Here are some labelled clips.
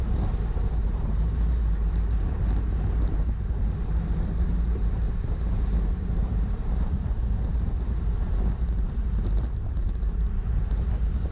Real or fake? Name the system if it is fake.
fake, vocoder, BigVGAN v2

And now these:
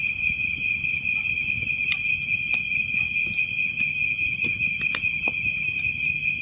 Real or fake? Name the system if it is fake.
real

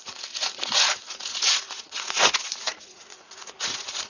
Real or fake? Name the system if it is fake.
fake, vocoder, Vocos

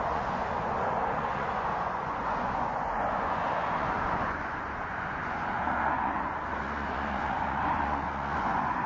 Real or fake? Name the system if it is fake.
fake, vocoder, Vocos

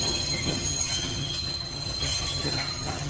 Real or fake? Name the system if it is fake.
fake, vocoder, HiFi-GAN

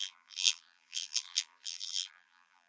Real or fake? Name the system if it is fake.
fake, vocoder, BigVGAN v2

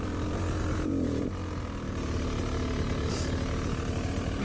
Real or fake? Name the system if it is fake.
real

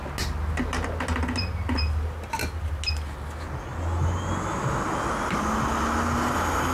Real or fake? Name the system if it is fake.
real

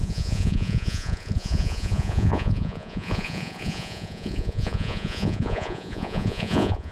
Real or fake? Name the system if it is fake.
fake, vocoder, Vocos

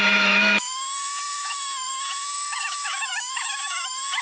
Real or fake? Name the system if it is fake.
fake, autoencoder, DAC-VAE